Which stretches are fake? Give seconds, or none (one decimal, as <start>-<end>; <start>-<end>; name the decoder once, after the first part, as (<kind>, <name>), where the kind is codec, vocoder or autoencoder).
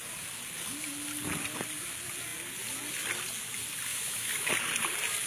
3.9-4.5 (autoencoder, DAC-VAE)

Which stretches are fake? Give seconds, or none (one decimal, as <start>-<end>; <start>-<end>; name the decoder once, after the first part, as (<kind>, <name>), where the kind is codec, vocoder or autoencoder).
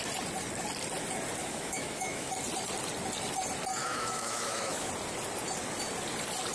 1.4-2.3 (autoencoder, DAC-VAE); 3.8-4.9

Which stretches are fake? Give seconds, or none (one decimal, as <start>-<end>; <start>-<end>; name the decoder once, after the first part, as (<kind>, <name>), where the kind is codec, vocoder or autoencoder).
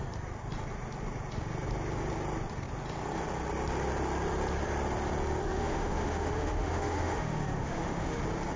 5.4-8.2 (autoencoder, DAC-VAE)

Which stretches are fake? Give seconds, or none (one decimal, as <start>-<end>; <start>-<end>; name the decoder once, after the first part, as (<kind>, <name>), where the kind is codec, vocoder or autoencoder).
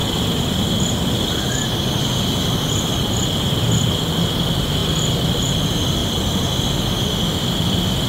none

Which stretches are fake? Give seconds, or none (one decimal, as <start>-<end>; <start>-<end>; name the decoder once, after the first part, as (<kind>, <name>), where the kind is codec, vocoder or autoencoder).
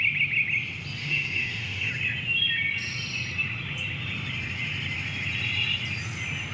1.0-1.9 (autoencoder, DAC-VAE)